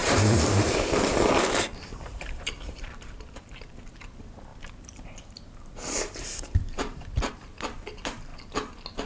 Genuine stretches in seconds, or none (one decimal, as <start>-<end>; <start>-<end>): 3.4-4.5; 7.3-9.1